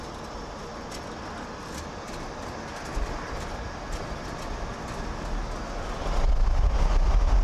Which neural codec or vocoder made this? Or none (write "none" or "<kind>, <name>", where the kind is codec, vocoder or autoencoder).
none